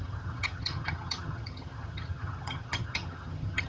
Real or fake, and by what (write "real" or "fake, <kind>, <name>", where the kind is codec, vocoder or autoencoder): fake, vocoder, HiFi-GAN